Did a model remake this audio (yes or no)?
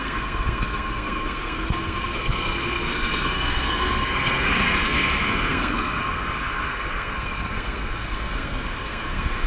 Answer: yes